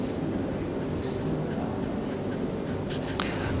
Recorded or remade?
recorded